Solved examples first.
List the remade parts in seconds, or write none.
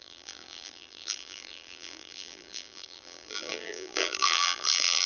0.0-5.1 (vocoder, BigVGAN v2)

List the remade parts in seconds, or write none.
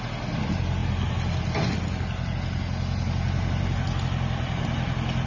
none